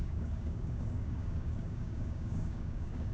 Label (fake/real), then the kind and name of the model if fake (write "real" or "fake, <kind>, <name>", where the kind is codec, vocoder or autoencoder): fake, codec, DAC